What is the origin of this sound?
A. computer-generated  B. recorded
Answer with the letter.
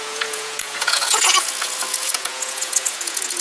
A